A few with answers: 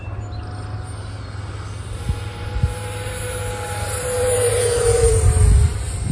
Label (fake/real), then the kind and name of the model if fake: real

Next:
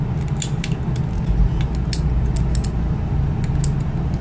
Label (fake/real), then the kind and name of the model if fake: real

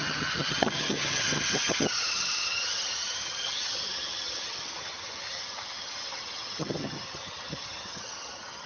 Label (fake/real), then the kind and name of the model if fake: fake, vocoder, HiFi-GAN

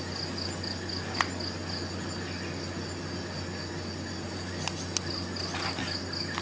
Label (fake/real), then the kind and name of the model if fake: real